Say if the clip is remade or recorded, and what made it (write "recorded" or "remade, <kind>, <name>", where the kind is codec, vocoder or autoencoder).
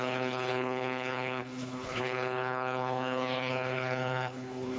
remade, codec, HILCodec